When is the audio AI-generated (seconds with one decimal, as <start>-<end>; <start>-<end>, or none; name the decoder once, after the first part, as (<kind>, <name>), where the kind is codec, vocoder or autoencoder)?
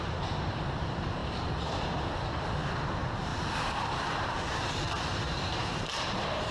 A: 0.0-6.5 (vocoder, BigVGAN v2)